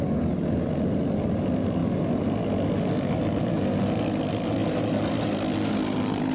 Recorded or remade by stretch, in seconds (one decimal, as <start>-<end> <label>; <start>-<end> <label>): 0.0-6.3 recorded